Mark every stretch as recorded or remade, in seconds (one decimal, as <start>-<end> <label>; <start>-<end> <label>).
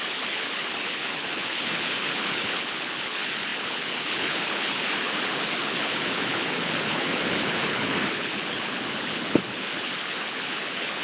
0.0-11.0 remade